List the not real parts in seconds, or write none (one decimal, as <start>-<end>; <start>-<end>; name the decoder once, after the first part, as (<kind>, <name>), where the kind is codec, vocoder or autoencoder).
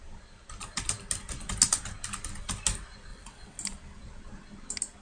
3.1-3.6 (vocoder, WaveNeXt)